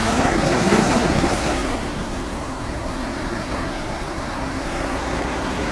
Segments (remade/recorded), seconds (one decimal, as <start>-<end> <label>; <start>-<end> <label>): 0.0-5.7 remade